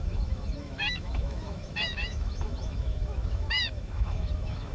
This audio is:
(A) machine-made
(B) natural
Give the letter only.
A